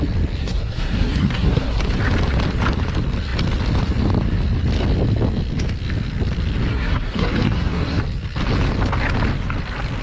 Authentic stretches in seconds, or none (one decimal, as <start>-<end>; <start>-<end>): 0.0-0.4; 1.8-6.7; 8.0-10.0